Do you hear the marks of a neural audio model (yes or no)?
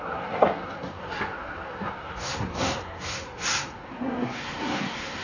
yes